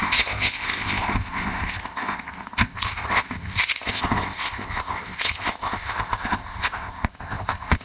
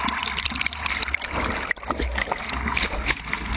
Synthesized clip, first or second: first